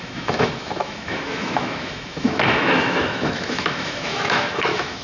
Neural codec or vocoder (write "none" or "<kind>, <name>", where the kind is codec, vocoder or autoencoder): autoencoder, DAC-VAE